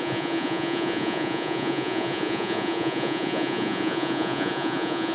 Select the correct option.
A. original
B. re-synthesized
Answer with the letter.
B